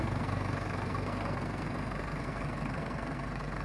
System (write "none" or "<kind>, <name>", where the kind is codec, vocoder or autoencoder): codec, SNAC